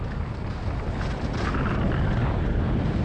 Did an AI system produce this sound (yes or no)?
no